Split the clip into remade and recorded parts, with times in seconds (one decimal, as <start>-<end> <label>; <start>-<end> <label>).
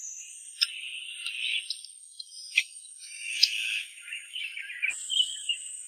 0.0-2.0 recorded; 2.0-4.4 remade; 4.4-5.1 recorded; 5.1-5.9 remade